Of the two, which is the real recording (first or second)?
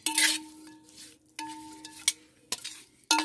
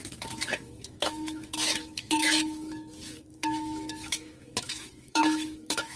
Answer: first